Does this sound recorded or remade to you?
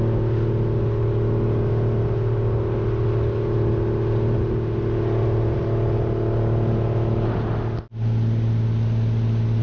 recorded